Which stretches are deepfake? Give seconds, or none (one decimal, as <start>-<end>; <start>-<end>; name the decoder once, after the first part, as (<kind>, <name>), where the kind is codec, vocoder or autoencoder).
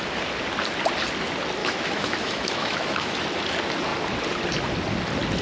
1.6-3.2 (autoencoder, DAC-VAE)